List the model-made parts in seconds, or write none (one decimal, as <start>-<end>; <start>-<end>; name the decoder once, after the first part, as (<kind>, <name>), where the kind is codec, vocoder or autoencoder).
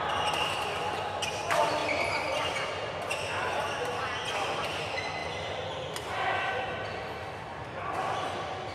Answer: none